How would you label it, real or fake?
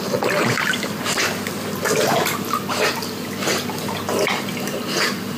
real